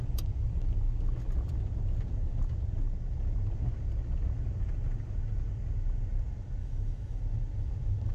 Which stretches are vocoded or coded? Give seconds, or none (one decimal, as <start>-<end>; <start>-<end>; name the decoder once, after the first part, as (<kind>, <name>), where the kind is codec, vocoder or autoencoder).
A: 6.6-7.2 (autoencoder, DAC-VAE)